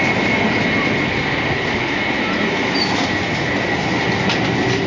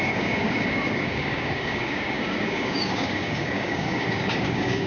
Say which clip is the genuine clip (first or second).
first